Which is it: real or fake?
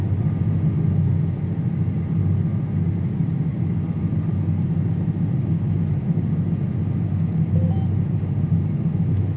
real